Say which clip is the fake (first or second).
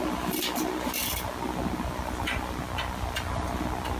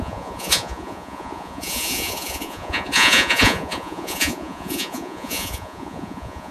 second